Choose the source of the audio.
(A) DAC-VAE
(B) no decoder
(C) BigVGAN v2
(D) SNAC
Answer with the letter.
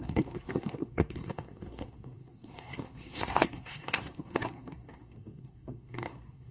D